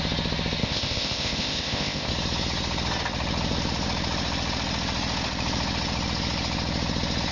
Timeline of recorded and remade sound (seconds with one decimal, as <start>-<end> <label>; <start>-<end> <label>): 0.0-0.6 recorded; 0.6-2.1 remade; 2.1-7.3 recorded